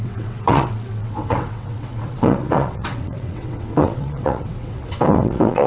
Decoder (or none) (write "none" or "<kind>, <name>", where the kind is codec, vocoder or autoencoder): vocoder, WaveNeXt